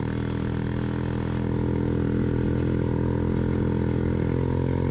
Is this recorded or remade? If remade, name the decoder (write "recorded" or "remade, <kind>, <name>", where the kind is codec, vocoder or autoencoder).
recorded